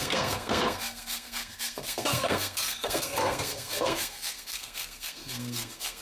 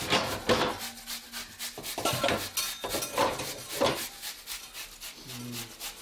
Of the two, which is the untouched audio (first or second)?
second